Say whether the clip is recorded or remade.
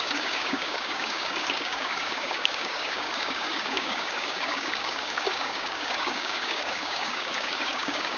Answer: remade